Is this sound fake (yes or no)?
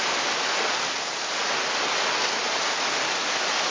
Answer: no